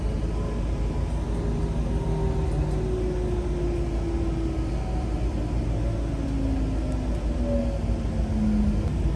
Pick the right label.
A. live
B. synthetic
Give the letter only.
A